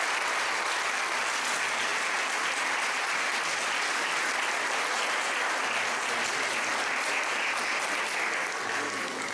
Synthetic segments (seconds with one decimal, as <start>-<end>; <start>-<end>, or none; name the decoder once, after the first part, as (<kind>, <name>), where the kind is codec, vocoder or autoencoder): none